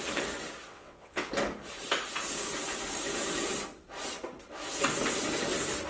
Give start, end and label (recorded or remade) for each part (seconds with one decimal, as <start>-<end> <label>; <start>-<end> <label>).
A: 0.0-0.7 recorded; 0.7-1.3 remade; 1.3-5.9 recorded

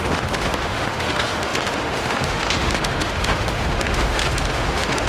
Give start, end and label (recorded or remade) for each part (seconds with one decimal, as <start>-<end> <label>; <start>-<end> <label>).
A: 0.0-5.1 remade

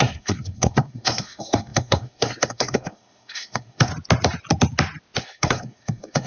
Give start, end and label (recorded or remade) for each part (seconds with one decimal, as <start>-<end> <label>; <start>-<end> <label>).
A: 0.0-3.9 remade; 3.9-5.2 recorded; 5.2-6.3 remade

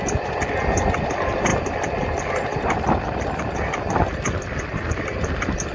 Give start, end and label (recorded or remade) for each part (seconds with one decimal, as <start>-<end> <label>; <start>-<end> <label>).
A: 0.0-5.7 recorded

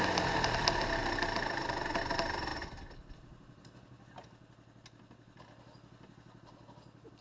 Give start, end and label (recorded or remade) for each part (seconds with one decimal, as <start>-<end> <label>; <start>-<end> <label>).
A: 0.0-7.2 recorded

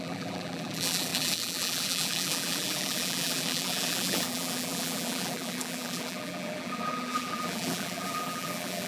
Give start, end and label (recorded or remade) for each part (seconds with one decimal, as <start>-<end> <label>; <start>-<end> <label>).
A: 0.0-8.9 remade